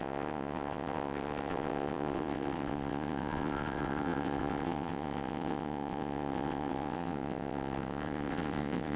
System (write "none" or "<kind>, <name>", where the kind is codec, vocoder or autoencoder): vocoder, WaveNeXt